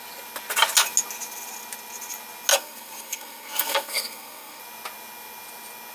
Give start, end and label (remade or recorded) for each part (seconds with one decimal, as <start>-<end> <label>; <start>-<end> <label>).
0.0-2.5 recorded; 2.5-4.6 remade; 4.6-5.9 recorded